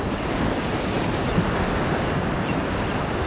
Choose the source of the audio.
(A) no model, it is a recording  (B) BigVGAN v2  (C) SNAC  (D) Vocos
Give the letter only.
A